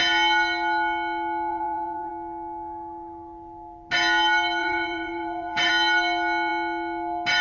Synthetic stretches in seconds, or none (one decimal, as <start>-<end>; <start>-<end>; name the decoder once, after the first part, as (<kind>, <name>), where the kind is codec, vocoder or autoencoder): 1.5-2.1 (vocoder, Vocos); 4.6-5.7